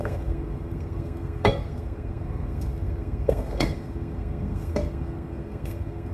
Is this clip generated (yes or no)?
yes